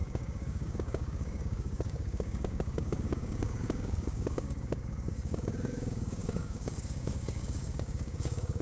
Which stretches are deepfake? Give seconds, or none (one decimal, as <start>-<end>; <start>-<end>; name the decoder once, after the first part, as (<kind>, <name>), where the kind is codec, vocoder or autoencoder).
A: 0.0-8.6 (codec, DAC)